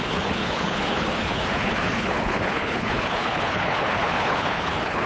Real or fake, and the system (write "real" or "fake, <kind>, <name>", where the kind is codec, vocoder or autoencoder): fake, codec, HILCodec